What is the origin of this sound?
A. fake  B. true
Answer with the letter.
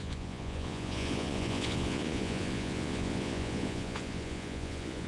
A